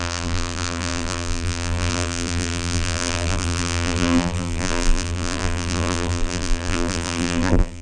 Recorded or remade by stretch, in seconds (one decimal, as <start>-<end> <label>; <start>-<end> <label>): 0.0-7.8 remade